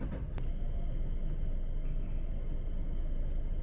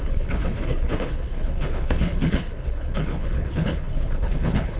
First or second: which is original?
first